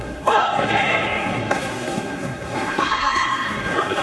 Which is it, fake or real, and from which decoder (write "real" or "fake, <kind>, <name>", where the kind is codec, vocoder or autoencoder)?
fake, codec, SNAC